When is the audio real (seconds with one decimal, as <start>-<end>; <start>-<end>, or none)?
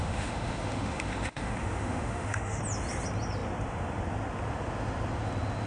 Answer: 2.6-5.7